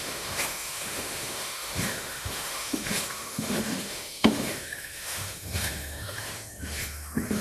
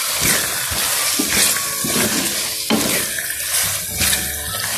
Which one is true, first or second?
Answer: second